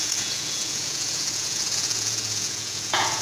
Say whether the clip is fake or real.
fake